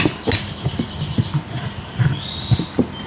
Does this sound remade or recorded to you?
recorded